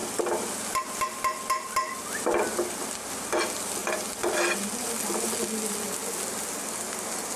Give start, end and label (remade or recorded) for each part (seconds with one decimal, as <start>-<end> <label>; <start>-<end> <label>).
0.0-7.4 recorded